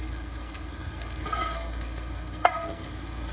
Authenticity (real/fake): fake